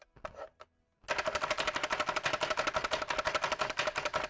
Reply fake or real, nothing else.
real